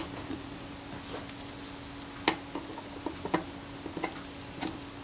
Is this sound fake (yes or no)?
no